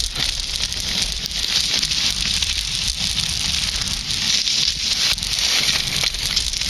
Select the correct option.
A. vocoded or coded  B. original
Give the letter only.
B